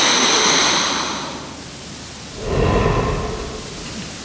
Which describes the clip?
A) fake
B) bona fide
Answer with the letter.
B